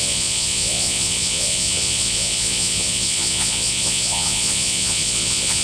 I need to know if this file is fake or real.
fake